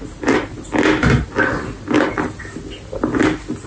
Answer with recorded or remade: recorded